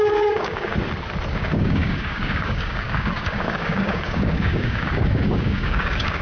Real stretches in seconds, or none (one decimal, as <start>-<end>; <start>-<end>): 0.7-1.3